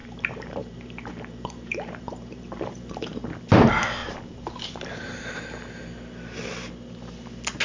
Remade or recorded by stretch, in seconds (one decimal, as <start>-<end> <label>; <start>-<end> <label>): 0.0-3.0 remade; 3.0-4.0 recorded; 4.0-5.8 remade; 5.8-7.6 recorded